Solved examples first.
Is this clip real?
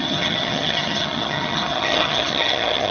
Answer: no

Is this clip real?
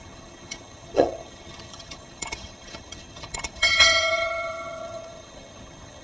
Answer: no